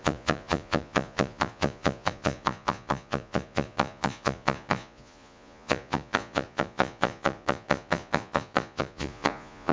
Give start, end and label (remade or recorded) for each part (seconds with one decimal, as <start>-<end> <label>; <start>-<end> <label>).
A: 0.0-9.7 remade